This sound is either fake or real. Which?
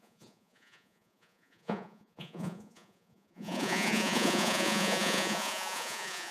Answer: fake